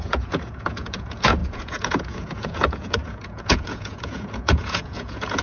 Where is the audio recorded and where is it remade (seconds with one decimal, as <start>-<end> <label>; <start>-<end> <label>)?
0.0-5.4 remade